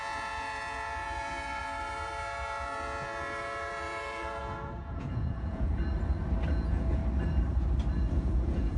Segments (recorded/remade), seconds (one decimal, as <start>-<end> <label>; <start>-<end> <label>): 0.0-5.8 remade; 5.8-6.5 recorded; 6.5-7.0 remade; 7.0-8.1 recorded; 8.1-8.8 remade